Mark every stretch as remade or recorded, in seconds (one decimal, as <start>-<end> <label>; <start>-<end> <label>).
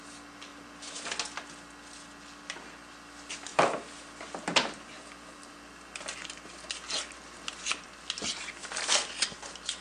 0.0-9.8 recorded